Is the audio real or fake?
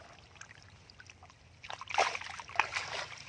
real